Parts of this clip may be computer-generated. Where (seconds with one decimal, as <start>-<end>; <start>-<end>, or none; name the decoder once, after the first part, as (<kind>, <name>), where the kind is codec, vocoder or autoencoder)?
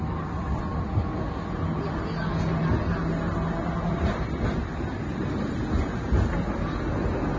none